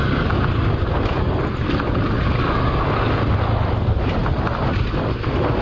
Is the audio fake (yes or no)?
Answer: no